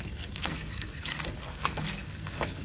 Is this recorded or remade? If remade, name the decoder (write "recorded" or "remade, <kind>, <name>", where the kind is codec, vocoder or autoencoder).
remade, codec, SNAC